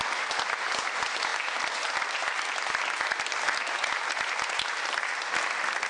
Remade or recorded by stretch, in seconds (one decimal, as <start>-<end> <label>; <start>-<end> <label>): 0.0-5.9 recorded

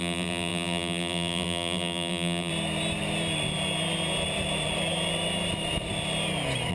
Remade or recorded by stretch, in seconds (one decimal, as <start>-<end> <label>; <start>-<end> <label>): 0.0-2.5 remade; 2.5-6.7 recorded

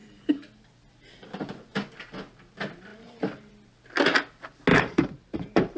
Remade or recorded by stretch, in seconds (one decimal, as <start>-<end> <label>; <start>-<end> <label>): 0.0-2.9 recorded; 2.9-3.5 remade; 3.5-4.7 recorded; 4.7-5.8 remade

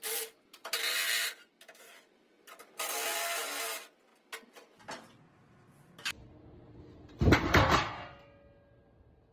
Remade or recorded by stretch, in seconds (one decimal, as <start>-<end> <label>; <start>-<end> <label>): 0.0-9.3 recorded